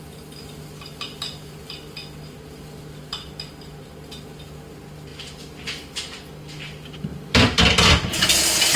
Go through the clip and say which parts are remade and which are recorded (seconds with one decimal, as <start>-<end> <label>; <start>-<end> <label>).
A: 0.0-7.1 recorded; 7.1-7.6 remade; 7.6-8.8 recorded